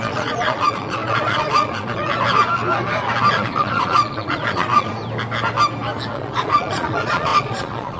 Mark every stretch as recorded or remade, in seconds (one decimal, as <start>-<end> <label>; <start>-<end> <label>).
0.0-2.1 remade; 2.1-3.3 recorded; 3.3-5.0 remade; 5.0-6.1 recorded; 6.1-8.0 remade

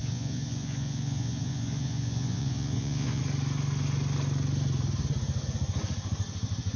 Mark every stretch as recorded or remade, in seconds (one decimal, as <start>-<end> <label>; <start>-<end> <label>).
0.0-3.2 remade; 3.2-6.8 recorded

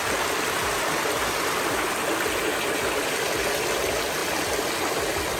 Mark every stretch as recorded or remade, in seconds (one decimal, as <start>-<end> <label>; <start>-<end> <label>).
0.0-5.4 recorded

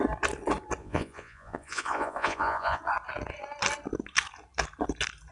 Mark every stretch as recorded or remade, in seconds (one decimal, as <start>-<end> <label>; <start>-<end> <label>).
0.0-0.8 recorded; 0.8-2.8 remade; 2.8-5.3 recorded